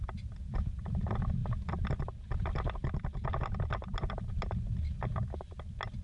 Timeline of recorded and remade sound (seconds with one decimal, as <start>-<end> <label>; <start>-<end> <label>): 0.0-6.0 recorded